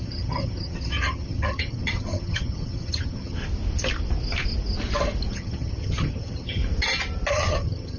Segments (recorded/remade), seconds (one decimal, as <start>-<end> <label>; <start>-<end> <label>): 0.0-3.4 remade; 3.4-5.3 recorded; 5.3-6.6 remade; 6.6-7.3 recorded; 7.3-8.0 remade